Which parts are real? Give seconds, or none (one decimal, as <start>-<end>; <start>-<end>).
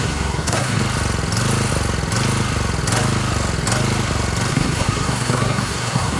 0.8-4.5